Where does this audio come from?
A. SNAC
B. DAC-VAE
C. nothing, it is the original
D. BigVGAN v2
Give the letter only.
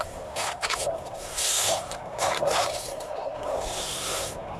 A